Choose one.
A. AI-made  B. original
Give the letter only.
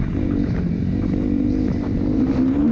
A